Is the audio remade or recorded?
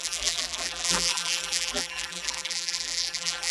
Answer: remade